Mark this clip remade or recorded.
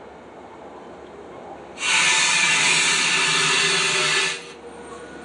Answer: recorded